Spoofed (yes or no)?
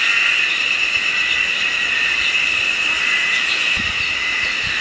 no